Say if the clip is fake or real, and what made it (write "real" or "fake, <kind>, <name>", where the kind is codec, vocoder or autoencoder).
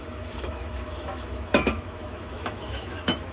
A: fake, autoencoder, DAC-VAE